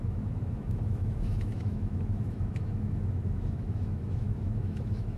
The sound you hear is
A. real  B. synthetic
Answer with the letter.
B